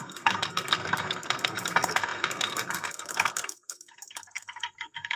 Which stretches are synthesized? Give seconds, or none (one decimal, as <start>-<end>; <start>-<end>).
0.0-5.2